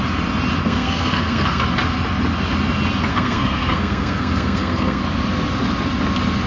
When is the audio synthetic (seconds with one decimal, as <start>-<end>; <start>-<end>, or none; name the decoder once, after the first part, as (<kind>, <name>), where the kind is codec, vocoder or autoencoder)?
0.6-1.6 (codec, SNAC); 3.1-5.0